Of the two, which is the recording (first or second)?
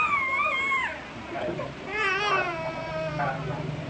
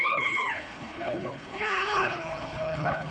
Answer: first